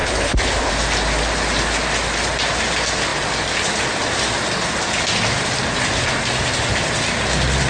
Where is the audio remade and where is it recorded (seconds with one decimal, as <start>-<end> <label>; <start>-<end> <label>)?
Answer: 0.0-0.7 remade; 0.7-7.7 recorded